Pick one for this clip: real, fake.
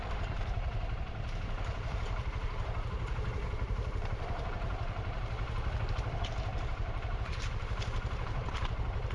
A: fake